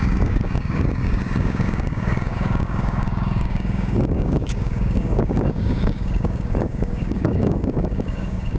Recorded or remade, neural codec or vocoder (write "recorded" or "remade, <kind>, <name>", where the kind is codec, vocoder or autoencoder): remade, codec, DAC